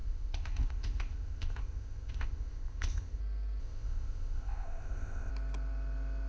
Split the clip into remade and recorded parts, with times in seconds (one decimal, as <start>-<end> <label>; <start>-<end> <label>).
0.0-3.2 remade; 3.2-3.6 recorded; 3.6-5.3 remade; 5.3-6.3 recorded